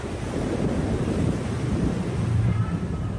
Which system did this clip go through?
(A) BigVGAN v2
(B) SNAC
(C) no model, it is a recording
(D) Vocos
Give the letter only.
A